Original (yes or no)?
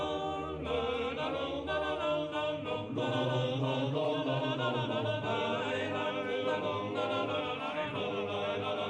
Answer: yes